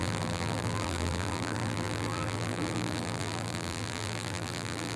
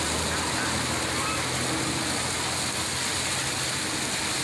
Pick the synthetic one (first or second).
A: first